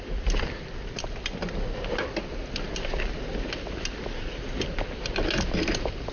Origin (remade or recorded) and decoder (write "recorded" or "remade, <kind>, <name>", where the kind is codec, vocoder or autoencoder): recorded